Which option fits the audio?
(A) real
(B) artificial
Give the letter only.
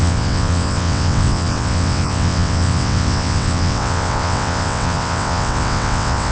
B